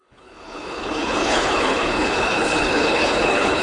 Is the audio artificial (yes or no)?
yes